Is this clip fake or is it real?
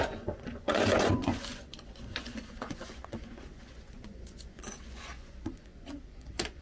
fake